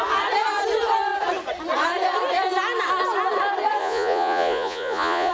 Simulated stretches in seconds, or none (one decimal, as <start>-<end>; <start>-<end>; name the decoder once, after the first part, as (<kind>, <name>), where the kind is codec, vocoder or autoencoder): 3.8-5.3 (vocoder, Vocos)